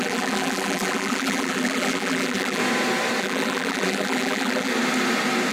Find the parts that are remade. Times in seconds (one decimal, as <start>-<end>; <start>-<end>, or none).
0.0-2.6; 3.2-4.7